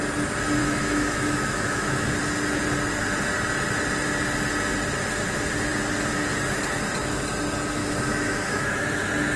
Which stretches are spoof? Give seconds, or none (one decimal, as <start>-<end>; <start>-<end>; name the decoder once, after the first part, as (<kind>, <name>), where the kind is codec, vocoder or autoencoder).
0.6-2.2 (autoencoder, DAC-VAE); 7.8-9.4